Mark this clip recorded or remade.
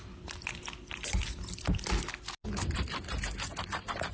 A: recorded